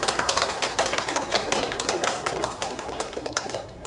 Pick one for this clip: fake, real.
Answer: fake